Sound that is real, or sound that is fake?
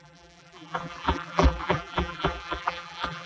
fake